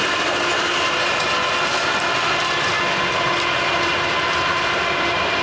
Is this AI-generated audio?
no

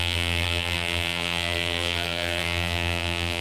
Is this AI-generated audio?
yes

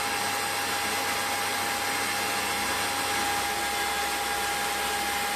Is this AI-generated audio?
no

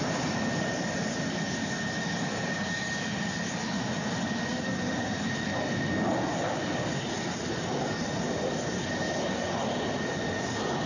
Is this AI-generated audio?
no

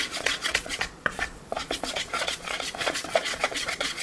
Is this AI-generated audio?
yes